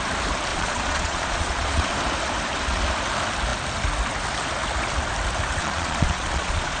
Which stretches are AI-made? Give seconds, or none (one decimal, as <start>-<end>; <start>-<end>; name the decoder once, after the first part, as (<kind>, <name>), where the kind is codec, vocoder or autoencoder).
0.5-1.9 (vocoder, Vocos); 5.6-6.8